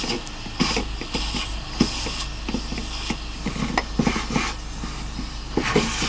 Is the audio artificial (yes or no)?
no